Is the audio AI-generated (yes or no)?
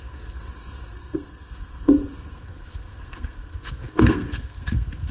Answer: yes